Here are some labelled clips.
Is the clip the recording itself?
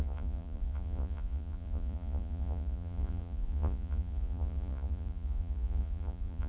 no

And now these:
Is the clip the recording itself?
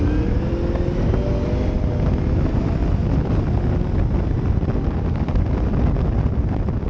yes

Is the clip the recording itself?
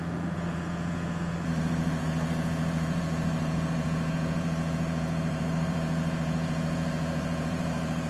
no